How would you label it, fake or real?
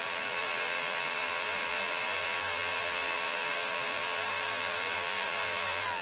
fake